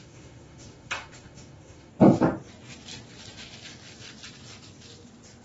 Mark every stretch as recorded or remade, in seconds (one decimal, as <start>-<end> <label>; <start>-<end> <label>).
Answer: 0.0-1.9 remade; 1.9-5.4 recorded